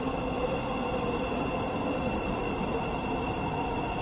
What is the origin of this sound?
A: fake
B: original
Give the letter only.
B